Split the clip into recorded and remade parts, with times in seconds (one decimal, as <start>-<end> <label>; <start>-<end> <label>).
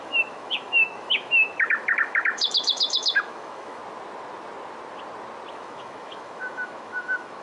0.0-3.8 remade; 3.8-5.5 recorded; 5.5-7.4 remade